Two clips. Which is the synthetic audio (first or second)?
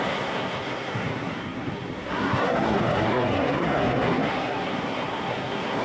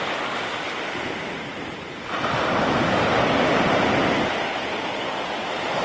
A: first